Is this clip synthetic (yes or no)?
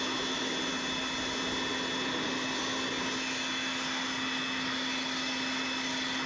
no